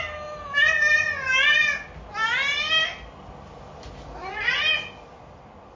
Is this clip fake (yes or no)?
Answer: no